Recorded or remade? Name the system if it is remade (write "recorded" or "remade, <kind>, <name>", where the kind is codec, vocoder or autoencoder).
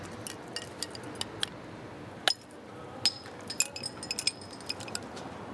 recorded